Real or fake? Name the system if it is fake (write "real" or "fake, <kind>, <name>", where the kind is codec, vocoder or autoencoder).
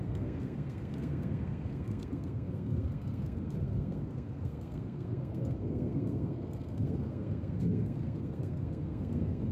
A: fake, codec, SNAC